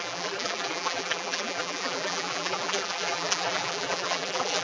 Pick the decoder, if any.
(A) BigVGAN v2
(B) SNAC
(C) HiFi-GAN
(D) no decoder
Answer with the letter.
A